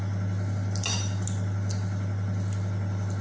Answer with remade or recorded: recorded